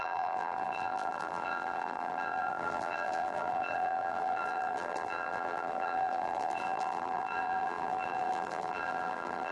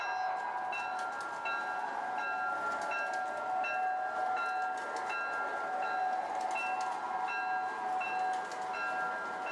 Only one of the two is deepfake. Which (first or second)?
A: first